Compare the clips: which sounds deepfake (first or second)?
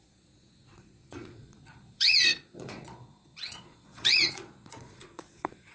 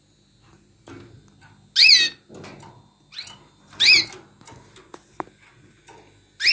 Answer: first